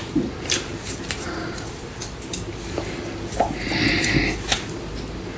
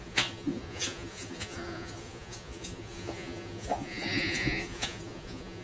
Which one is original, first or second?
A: first